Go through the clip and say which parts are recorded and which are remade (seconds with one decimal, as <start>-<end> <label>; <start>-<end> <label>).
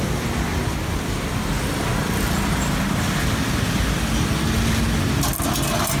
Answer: 0.0-6.0 recorded